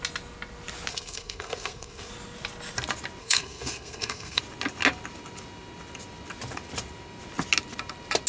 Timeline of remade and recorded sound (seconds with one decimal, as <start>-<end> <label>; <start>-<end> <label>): 0.0-0.9 recorded; 0.9-2.1 remade; 2.1-3.2 recorded; 3.2-4.4 remade; 4.4-8.3 recorded